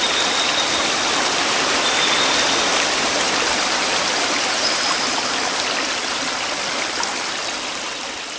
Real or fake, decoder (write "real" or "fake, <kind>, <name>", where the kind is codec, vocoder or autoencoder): real